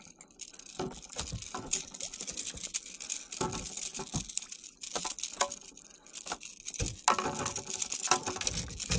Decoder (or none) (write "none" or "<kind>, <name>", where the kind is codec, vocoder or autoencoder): none